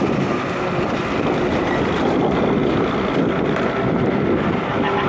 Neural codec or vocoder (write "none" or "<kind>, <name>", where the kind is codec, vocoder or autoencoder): none